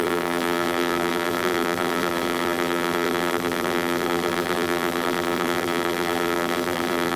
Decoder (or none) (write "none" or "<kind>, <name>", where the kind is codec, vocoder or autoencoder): vocoder, BigVGAN v2